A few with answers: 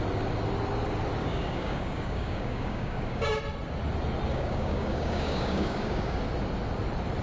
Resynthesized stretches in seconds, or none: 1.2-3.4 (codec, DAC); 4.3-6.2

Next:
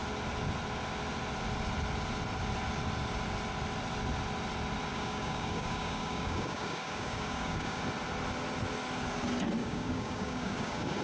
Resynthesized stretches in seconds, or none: 4.9-7.8 (codec, DAC); 9.6-11.0

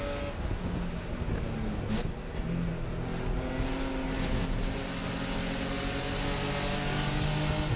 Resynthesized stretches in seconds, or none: none

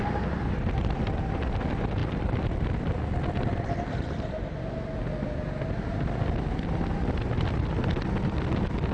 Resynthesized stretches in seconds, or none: none

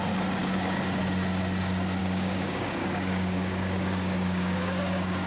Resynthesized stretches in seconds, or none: 0.4-1.0 (codec, DAC); 2.0-5.3

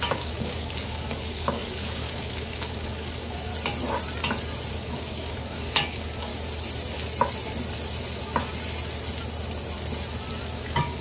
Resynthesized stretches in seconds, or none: 0.0-3.5 (codec, DAC); 4.7-6.3; 10.4-11.0

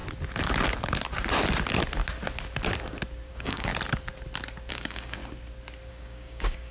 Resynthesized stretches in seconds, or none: 3.3-3.7 (codec, DAC); 4.7-5.2; 5.9-6.7

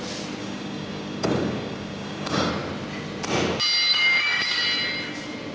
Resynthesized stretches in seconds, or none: 0.4-2.5 (codec, DAC); 3.9-4.6